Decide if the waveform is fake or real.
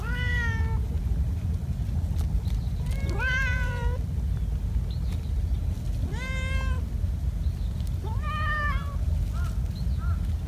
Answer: real